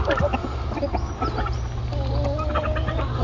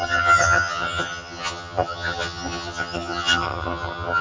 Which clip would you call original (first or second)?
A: first